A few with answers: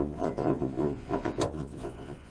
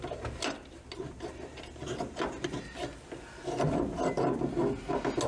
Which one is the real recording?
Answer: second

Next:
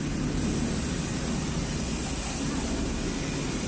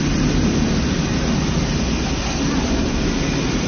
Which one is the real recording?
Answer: first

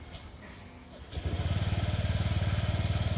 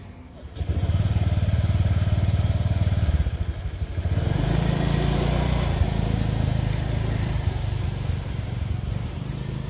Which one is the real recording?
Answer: first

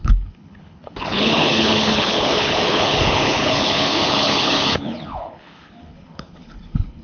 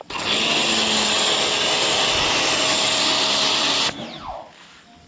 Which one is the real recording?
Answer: second